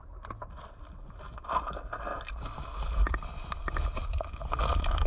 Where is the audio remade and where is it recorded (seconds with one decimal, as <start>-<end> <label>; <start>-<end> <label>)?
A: 0.0-5.1 recorded